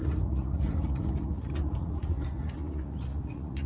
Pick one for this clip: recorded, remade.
remade